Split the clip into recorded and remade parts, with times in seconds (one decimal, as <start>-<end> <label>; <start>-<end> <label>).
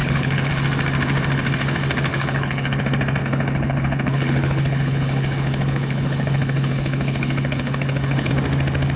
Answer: 0.0-0.5 remade; 0.5-2.1 recorded; 2.1-2.8 remade; 2.8-3.2 recorded; 3.2-8.3 remade; 8.3-9.0 recorded